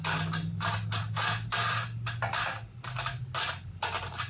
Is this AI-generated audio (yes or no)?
no